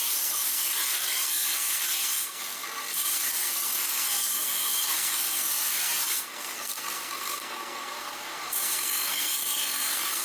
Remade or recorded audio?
remade